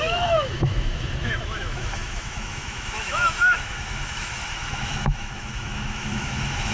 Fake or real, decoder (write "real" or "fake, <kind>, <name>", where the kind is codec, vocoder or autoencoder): fake, autoencoder, DAC-VAE